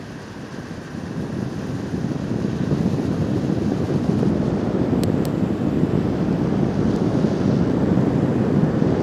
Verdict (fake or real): real